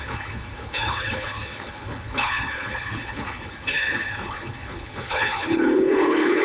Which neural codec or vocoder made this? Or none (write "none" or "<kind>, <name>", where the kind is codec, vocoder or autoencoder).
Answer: codec, HILCodec